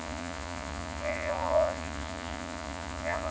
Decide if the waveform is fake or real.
fake